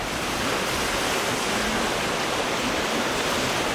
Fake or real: real